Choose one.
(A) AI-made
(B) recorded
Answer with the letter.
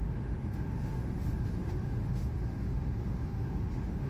A